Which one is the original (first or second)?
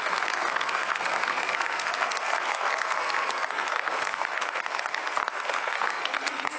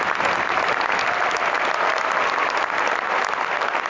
second